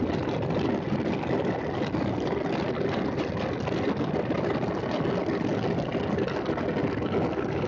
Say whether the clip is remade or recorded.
recorded